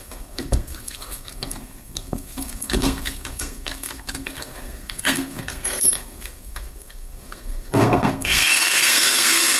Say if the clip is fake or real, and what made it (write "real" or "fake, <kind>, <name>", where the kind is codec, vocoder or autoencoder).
fake, codec, SNAC